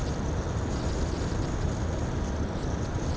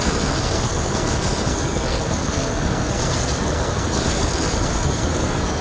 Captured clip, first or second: first